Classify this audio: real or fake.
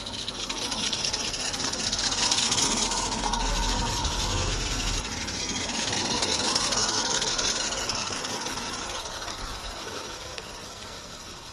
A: fake